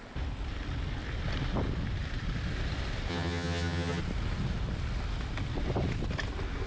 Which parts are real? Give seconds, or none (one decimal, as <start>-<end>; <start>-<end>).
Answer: 0.0-3.1; 4.0-6.7